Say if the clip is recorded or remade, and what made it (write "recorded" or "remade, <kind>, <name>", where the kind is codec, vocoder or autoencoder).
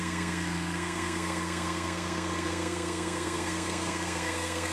remade, codec, SNAC